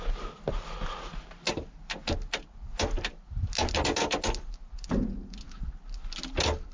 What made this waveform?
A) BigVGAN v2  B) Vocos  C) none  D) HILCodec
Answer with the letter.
C